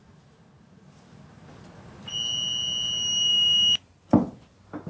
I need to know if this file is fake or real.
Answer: real